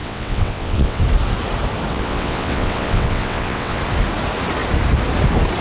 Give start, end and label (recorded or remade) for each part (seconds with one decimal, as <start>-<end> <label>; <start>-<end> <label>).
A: 0.0-1.0 remade; 1.0-1.9 recorded; 1.9-3.8 remade; 3.8-5.6 recorded